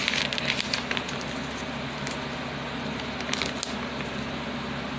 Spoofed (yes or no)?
no